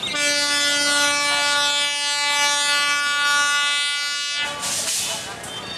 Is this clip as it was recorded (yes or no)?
yes